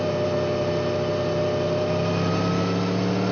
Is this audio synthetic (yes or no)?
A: no